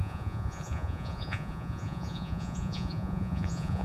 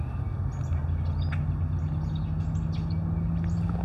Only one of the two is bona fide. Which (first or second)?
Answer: second